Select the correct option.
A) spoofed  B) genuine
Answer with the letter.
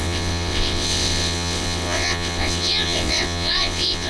A